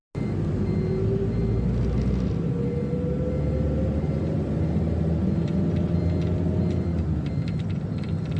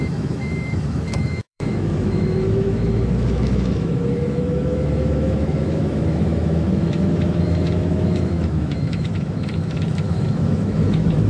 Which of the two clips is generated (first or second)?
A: second